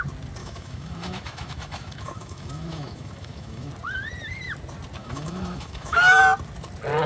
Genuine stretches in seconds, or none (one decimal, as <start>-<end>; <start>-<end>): 0.0-0.4; 3.7-5.0; 6.2-7.1